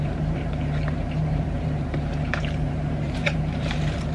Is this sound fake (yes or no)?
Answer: yes